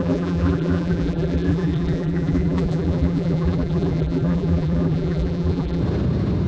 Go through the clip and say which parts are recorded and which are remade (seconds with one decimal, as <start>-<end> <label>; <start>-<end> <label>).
0.0-5.8 remade; 5.8-6.5 recorded